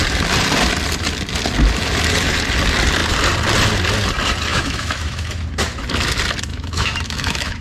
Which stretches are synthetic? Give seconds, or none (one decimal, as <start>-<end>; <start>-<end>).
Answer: 4.5-5.3; 6.5-7.6